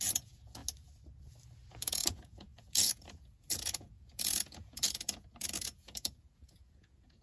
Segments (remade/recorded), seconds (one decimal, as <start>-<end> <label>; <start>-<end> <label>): 0.0-0.6 remade; 0.6-1.7 recorded; 1.7-7.2 remade